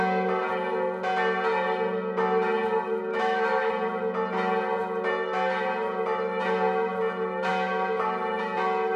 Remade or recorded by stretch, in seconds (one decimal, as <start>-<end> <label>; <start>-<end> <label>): 0.0-3.1 recorded; 3.1-3.7 remade; 3.7-9.0 recorded